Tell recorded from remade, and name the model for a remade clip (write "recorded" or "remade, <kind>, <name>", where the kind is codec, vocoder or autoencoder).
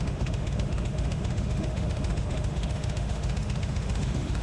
remade, autoencoder, DAC-VAE